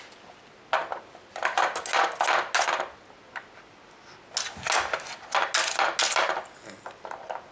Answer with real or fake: real